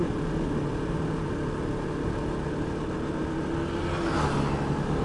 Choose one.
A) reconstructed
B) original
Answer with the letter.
B